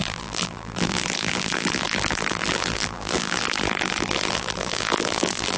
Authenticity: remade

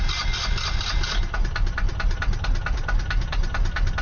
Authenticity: remade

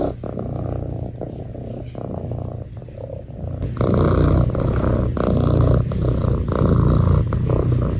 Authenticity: recorded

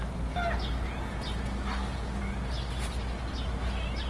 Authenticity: recorded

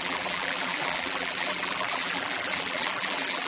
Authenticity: remade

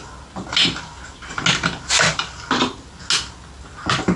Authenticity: recorded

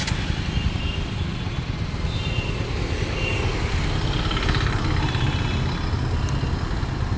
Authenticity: recorded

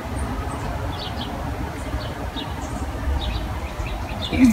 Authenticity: remade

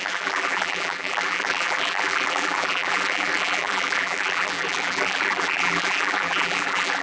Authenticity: remade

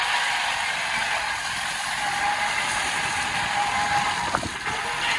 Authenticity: recorded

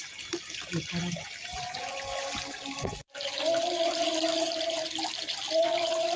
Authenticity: remade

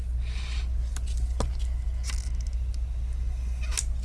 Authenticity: recorded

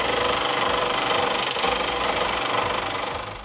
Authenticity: remade